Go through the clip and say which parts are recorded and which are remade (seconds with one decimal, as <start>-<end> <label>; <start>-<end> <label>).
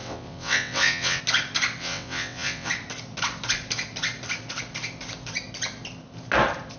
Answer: 0.0-1.2 remade; 1.2-1.8 recorded; 1.8-2.7 remade; 2.7-6.8 recorded